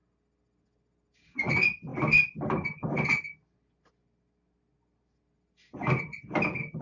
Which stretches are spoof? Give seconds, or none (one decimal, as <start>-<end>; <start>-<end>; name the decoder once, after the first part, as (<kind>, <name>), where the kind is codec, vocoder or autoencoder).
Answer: none